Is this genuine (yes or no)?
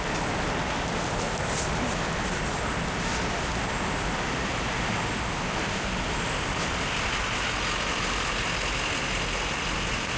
yes